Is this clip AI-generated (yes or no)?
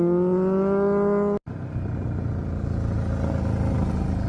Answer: no